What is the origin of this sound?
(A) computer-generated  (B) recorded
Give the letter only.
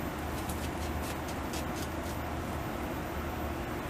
B